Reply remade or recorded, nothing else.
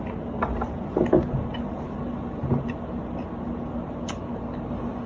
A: recorded